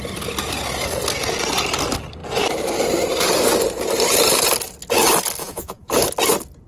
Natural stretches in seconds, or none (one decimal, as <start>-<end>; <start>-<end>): 0.0-5.4; 5.9-6.7

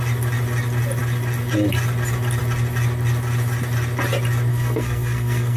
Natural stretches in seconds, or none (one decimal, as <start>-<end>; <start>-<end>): 0.0-4.5

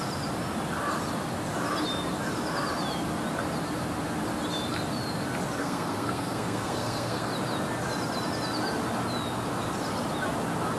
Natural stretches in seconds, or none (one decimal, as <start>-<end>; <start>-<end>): 0.0-5.6; 7.3-10.8

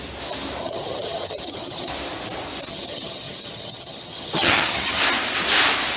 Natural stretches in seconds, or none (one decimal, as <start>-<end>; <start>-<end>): 0.0-0.6; 1.9-2.7; 5.0-6.0

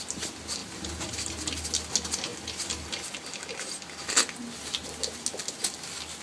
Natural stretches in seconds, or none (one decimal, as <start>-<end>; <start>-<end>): 0.0-0.6; 1.3-6.2